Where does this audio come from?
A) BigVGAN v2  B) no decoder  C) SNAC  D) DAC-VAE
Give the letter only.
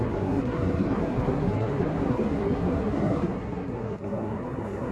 C